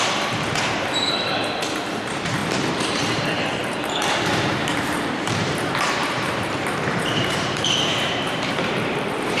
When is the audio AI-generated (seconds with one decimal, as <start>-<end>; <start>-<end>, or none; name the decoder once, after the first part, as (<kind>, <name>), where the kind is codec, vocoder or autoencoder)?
0.0-9.4 (vocoder, BigVGAN v2)